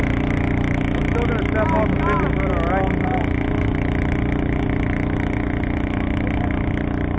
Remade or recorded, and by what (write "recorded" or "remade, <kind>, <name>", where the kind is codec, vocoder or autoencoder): recorded